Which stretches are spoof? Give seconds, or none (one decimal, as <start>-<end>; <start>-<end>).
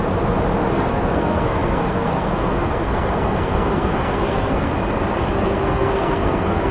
0.7-4.7; 5.3-6.7